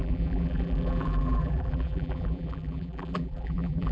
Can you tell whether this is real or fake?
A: fake